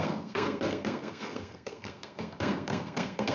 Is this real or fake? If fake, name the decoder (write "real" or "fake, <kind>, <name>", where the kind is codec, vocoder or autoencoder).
fake, codec, SNAC